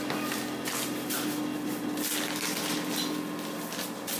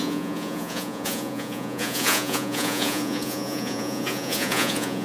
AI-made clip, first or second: second